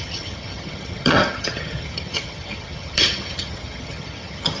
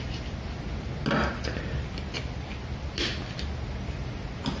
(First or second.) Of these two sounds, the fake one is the first